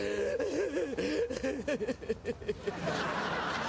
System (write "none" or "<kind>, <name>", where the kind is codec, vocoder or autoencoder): none